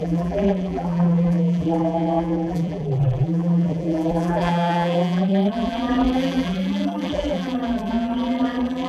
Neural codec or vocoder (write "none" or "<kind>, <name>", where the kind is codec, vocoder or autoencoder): vocoder, BigVGAN v2